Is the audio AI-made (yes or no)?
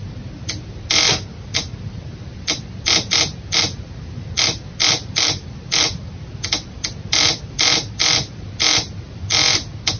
no